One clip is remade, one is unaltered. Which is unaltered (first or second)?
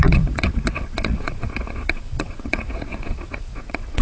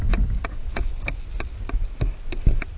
second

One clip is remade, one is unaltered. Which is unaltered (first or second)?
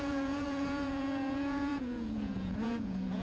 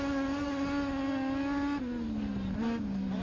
second